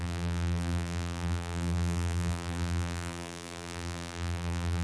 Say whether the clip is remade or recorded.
remade